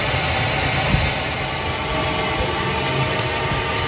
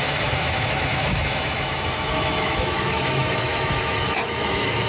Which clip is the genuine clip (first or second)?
first